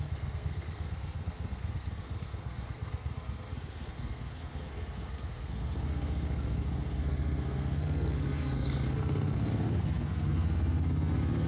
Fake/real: fake